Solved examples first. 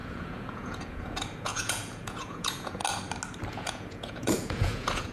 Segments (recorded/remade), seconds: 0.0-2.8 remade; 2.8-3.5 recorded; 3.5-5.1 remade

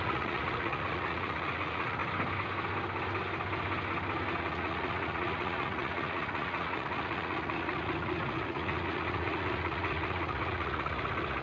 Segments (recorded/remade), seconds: 0.0-2.0 remade; 2.0-4.4 recorded; 4.4-11.4 remade

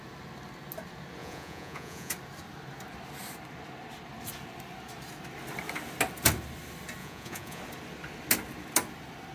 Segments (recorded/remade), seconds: 0.0-1.2 recorded; 1.2-2.1 remade; 2.1-7.0 recorded; 7.0-7.6 remade; 7.6-9.3 recorded

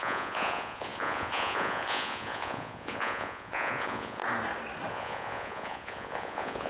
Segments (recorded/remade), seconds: 0.0-4.2 remade; 4.2-4.9 recorded; 4.9-6.7 remade

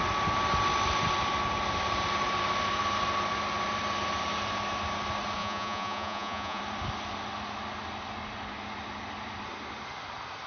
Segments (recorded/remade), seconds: 0.0-5.4 recorded; 5.4-6.6 remade; 6.6-10.5 recorded

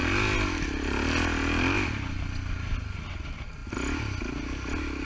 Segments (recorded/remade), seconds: 0.0-5.0 recorded

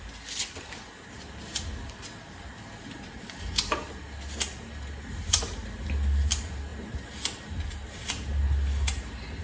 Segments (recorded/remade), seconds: 0.0-9.4 recorded

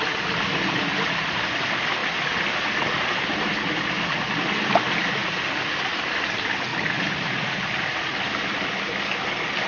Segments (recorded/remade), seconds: 0.0-9.7 recorded